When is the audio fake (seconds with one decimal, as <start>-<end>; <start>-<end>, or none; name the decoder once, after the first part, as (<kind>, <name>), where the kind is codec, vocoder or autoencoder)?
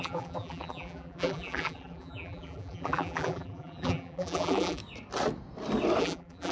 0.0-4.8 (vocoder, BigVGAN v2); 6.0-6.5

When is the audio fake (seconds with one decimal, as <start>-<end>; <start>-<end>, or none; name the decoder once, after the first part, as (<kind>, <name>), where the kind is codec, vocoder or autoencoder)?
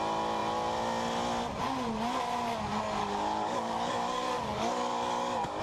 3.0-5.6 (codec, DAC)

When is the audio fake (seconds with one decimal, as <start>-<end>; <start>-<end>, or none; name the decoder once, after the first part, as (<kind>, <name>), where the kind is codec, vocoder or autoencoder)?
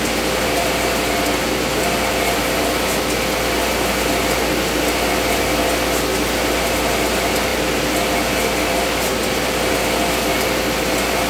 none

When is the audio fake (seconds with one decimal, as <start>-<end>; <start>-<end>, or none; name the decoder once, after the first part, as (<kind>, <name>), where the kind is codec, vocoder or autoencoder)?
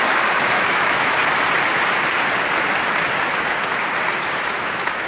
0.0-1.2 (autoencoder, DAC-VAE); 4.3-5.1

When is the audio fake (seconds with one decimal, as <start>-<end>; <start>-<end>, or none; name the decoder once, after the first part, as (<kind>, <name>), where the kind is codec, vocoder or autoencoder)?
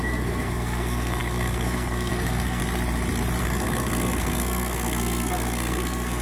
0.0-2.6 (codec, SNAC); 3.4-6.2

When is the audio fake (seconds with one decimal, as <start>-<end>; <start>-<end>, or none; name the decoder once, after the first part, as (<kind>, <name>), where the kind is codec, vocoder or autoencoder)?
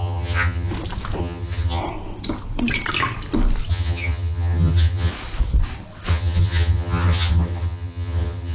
0.0-0.7 (vocoder, HiFi-GAN); 1.2-1.8; 3.7-5.1; 6.1-8.5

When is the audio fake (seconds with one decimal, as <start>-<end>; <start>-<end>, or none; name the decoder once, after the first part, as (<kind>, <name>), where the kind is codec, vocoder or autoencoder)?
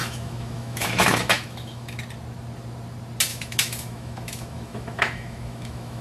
0.0-2.0 (autoencoder, DAC-VAE); 3.3-6.0